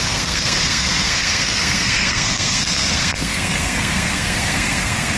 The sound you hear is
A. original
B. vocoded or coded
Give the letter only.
B